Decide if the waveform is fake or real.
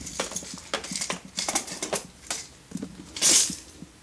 real